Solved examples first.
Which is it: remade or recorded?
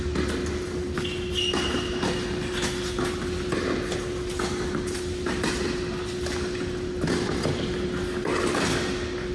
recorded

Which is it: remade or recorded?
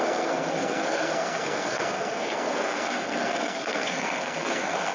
remade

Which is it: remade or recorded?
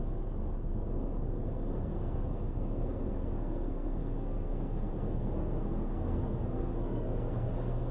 remade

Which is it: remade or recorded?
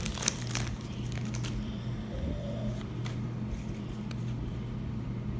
recorded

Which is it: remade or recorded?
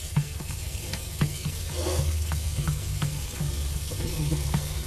remade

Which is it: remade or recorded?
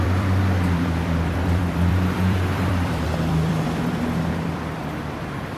remade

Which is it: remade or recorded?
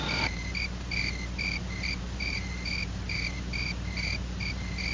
remade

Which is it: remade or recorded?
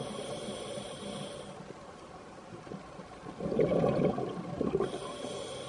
recorded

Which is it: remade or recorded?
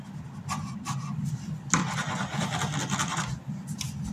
recorded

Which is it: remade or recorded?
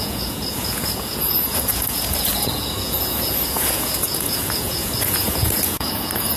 remade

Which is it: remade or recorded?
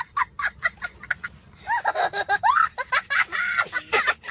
recorded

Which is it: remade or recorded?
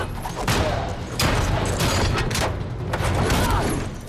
recorded